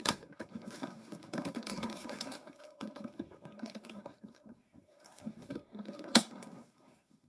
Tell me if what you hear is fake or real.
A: fake